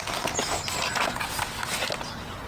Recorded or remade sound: recorded